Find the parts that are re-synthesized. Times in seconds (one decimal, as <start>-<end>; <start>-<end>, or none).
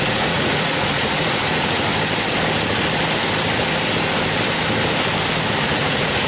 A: 0.0-1.9; 5.6-6.3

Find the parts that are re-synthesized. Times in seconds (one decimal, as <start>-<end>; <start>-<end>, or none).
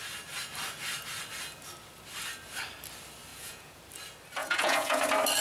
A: 3.3-3.8; 4.4-5.0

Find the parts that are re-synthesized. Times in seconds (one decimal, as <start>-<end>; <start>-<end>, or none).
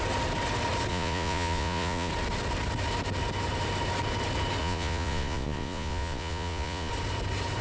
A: 0.9-2.1; 4.6-6.9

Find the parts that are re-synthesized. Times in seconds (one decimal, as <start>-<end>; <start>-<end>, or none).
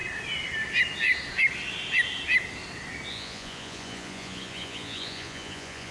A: 3.1-5.9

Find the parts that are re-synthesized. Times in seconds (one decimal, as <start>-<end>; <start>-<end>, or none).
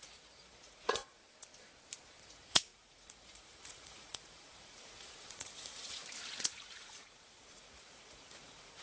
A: 0.0-1.2; 2.2-6.0; 6.5-8.8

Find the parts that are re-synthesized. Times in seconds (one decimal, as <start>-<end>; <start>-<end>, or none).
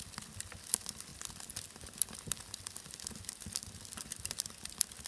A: none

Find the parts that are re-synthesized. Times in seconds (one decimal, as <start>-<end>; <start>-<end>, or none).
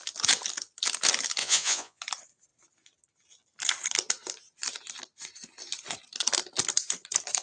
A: 1.4-2.0